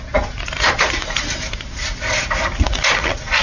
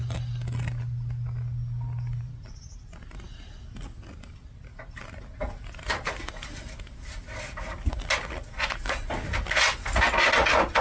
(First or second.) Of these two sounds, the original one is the second